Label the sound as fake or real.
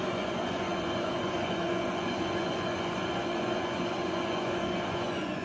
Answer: fake